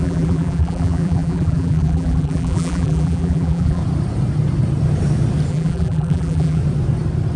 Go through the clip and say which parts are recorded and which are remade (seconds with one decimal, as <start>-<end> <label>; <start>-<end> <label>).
0.0-3.8 remade; 3.8-5.5 recorded; 5.5-6.6 remade; 6.6-7.4 recorded